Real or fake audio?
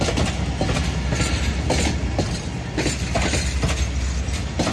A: real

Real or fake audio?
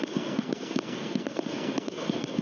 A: fake